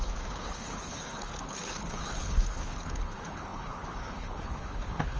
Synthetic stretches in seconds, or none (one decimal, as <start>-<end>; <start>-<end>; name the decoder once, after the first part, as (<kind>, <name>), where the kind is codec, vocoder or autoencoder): 0.0-5.2 (codec, HILCodec)